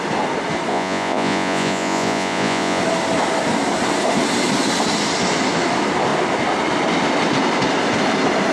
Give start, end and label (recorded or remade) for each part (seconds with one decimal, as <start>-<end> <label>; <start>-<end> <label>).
0.0-0.7 recorded; 0.7-2.8 remade; 2.8-8.5 recorded